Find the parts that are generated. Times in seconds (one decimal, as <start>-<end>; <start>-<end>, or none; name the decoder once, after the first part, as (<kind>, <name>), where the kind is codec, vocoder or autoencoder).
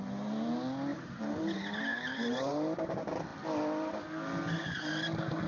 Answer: 0.9-1.4 (vocoder, BigVGAN v2); 1.9-2.5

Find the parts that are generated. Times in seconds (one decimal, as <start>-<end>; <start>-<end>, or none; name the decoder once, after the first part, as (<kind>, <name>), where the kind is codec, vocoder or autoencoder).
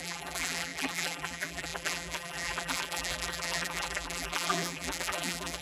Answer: 0.0-5.6 (vocoder, BigVGAN v2)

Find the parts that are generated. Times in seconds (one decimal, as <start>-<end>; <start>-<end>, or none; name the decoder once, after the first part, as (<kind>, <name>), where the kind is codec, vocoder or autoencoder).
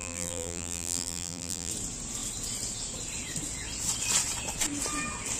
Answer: 0.0-1.7 (vocoder, BigVGAN v2)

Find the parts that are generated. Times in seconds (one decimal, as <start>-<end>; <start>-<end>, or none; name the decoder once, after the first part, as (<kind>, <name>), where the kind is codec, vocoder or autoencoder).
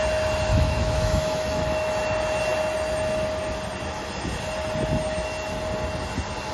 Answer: 0.5-1.9 (autoencoder, DAC-VAE)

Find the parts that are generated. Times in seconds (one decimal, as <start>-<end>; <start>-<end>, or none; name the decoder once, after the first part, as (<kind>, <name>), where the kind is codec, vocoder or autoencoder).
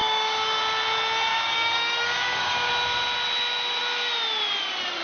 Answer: 0.0-0.6 (codec, DAC); 1.3-2.7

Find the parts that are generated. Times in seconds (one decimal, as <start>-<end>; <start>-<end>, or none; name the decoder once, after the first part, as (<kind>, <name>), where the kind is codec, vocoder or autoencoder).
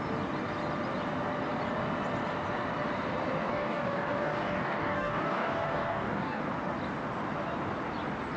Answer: 3.5-6.4 (codec, DAC)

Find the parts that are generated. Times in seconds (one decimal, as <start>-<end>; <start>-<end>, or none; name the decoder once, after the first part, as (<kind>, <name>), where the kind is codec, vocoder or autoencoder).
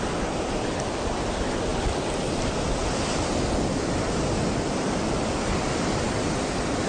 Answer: none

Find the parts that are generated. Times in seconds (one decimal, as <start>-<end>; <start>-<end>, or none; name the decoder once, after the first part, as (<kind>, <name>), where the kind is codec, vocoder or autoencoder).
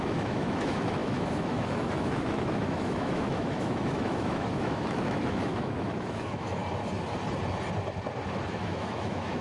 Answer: 0.0-6.6 (autoencoder, DAC-VAE); 8.5-9.4